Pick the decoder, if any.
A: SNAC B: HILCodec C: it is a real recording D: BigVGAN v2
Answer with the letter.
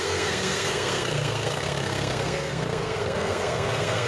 A